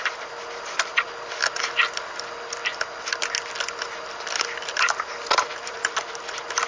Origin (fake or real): real